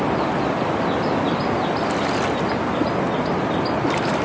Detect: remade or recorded recorded